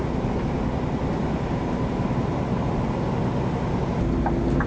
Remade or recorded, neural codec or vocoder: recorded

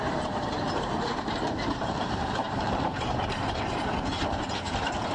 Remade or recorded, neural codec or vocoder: remade, vocoder, BigVGAN v2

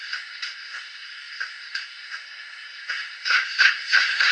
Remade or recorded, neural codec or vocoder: remade, codec, SNAC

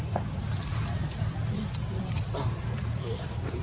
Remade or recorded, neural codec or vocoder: remade, vocoder, BigVGAN v2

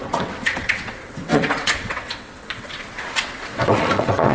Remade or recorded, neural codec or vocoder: remade, vocoder, WaveNeXt